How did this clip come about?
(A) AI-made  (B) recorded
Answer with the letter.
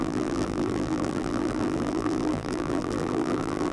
A